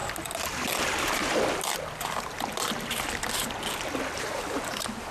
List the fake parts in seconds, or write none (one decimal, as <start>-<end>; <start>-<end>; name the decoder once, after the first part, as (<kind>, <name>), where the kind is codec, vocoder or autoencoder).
none